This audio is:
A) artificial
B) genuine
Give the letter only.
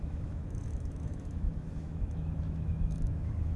A